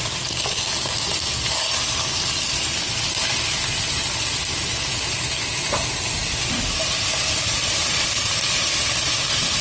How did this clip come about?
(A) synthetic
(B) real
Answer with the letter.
B